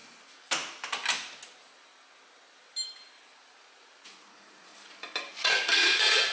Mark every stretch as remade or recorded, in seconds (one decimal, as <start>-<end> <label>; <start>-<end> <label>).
0.0-3.8 recorded; 3.8-4.7 remade; 4.7-5.3 recorded; 5.3-6.3 remade